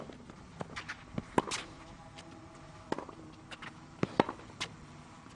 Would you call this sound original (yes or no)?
yes